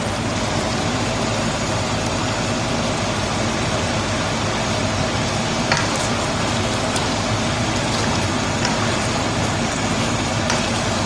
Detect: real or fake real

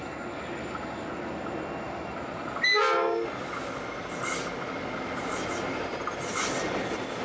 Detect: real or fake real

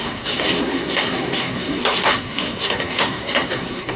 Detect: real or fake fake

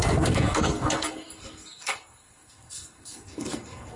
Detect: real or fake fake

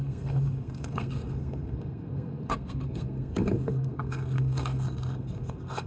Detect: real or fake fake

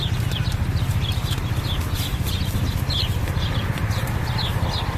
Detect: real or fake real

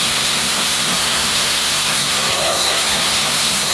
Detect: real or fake fake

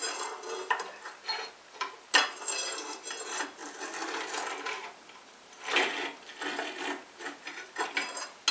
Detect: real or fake real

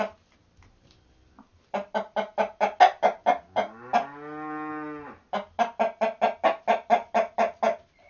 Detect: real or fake real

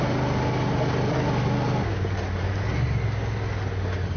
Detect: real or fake real